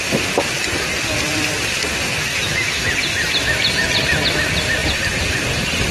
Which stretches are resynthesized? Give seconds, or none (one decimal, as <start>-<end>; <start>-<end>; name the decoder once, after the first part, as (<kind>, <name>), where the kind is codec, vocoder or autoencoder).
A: 2.3-2.8 (autoencoder, DAC-VAE)